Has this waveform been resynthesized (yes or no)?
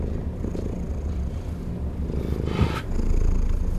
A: yes